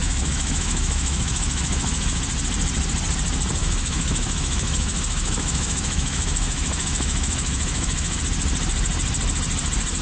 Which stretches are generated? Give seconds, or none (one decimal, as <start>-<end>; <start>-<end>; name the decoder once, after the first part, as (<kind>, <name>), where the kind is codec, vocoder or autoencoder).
0.0-2.2 (autoencoder, DAC-VAE); 3.6-8.2